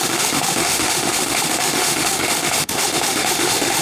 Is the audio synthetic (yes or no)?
yes